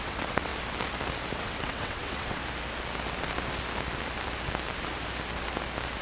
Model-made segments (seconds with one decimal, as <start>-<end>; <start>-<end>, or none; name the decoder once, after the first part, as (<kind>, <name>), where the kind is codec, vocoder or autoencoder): 0.0-0.5 (vocoder, WaveNeXt); 1.4-2.4